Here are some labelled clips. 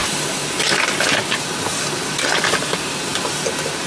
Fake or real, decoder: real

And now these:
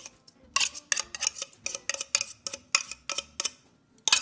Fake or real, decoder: real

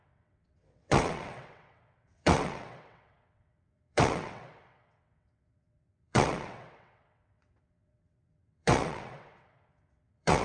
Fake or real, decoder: fake, vocoder, WaveNeXt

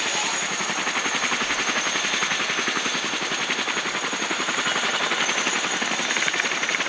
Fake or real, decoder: real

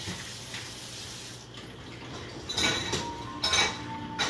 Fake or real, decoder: real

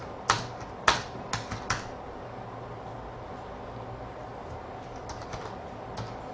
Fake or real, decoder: real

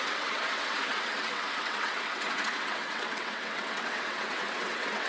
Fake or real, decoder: fake, vocoder, WaveNeXt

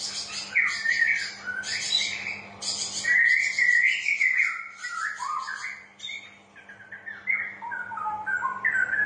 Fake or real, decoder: real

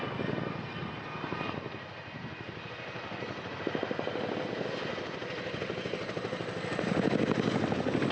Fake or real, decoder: real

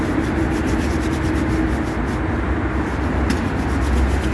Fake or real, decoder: real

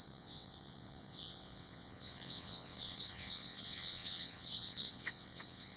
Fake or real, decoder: fake, vocoder, WaveNeXt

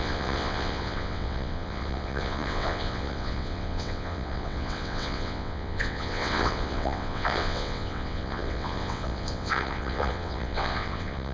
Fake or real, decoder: fake, vocoder, WaveNeXt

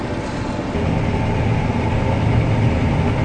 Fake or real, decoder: real